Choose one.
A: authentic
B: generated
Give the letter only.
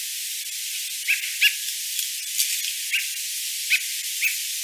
A